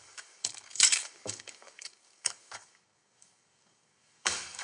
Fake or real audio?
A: fake